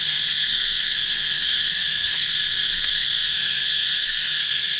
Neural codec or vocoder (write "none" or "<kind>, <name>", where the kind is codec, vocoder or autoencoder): codec, SNAC